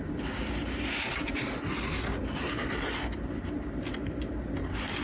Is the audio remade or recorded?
recorded